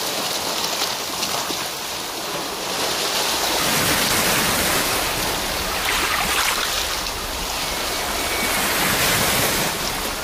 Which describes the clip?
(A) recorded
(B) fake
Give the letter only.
A